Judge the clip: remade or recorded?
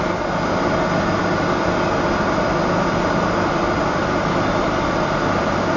recorded